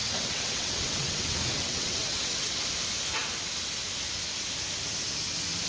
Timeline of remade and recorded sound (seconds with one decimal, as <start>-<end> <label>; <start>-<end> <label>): 0.0-2.6 remade; 2.6-5.7 recorded

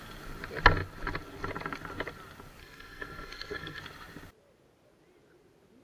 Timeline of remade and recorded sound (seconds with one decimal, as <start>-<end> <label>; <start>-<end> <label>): 0.0-2.6 recorded; 2.6-3.8 remade; 3.8-5.8 recorded

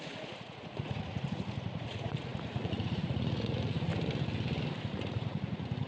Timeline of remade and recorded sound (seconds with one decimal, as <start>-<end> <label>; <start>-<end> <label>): 0.0-3.9 remade; 3.9-4.8 recorded; 4.8-5.9 remade

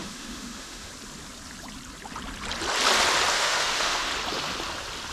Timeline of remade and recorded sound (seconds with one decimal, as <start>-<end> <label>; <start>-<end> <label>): 0.0-0.9 remade; 0.9-3.3 recorded; 3.3-4.1 remade; 4.1-5.1 recorded

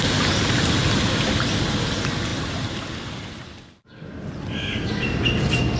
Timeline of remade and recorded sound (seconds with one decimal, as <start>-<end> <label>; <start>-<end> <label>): 0.0-5.8 recorded

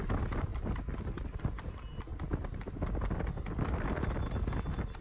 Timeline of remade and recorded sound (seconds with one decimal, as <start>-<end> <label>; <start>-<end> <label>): 0.0-5.0 recorded